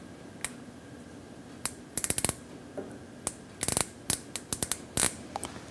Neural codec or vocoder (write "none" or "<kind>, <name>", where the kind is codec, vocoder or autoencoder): none